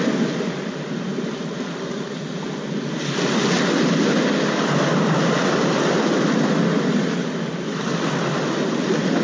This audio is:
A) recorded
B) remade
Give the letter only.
A